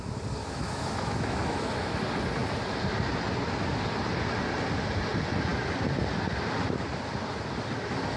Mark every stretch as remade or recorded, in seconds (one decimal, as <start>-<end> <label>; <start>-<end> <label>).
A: 0.0-0.4 recorded; 0.4-2.0 remade; 2.0-8.2 recorded